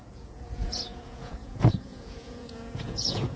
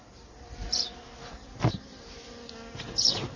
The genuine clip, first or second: second